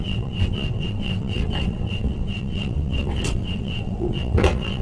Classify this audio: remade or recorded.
remade